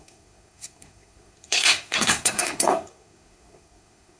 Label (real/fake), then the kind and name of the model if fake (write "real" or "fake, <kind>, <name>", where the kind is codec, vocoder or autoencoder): fake, codec, SNAC